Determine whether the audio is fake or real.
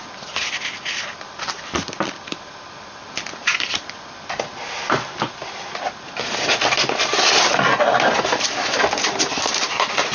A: fake